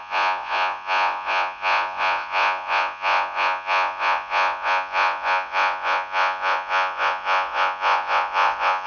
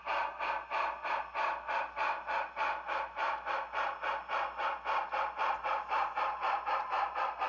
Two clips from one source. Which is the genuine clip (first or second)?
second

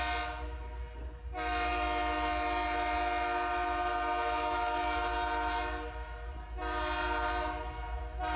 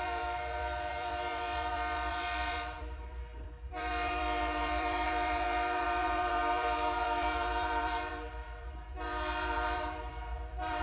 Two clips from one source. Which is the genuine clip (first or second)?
first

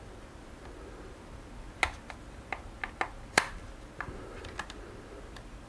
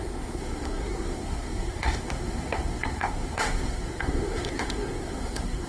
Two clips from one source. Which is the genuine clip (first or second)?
first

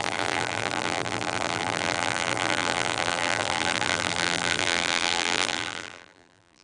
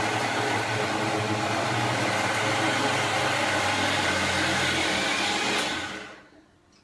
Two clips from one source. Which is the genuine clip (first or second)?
second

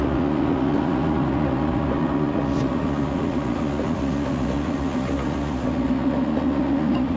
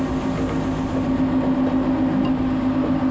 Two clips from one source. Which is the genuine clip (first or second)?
second